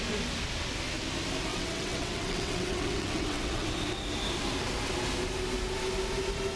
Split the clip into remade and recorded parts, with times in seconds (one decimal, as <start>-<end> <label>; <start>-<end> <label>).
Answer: 0.0-1.5 recorded; 1.5-3.7 remade; 3.7-6.6 recorded